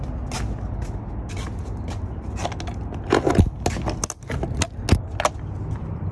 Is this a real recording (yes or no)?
yes